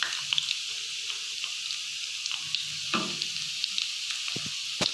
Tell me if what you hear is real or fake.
real